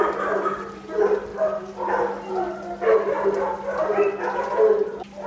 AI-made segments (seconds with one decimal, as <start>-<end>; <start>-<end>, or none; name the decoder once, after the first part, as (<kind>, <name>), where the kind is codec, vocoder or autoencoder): none